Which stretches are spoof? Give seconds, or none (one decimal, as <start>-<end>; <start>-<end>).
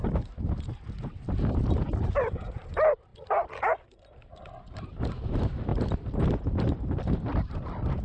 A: 5.7-6.4